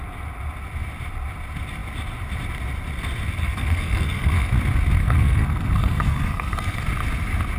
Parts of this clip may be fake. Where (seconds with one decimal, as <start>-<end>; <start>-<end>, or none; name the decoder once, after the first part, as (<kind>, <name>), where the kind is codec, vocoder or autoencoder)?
3.4-4.5 (codec, SNAC); 5.0-6.8